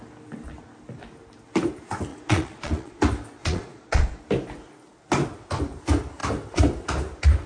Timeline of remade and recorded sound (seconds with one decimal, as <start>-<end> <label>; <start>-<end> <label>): 0.0-2.1 recorded; 2.1-3.0 remade; 3.0-3.4 recorded; 3.4-4.2 remade; 4.2-7.5 recorded